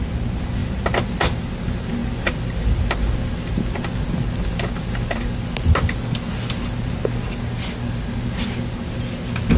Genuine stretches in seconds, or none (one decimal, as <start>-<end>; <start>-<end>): 0.0-9.6